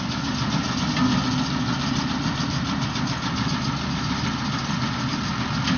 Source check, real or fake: real